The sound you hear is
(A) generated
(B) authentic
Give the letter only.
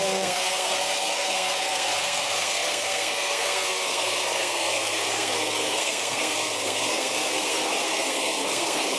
A